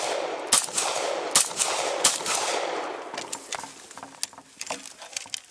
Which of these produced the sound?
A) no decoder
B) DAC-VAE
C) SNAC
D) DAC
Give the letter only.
A